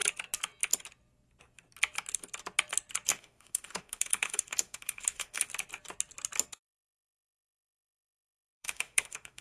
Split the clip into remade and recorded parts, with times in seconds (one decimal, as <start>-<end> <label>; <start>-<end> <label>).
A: 0.0-3.1 recorded; 3.1-5.5 remade; 5.5-6.6 recorded; 6.6-9.4 remade